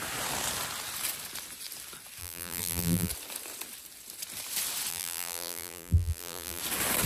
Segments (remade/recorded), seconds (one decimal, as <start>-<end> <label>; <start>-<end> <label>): 0.0-2.2 recorded; 2.2-3.1 remade; 3.1-4.9 recorded; 4.9-6.6 remade; 6.6-7.1 recorded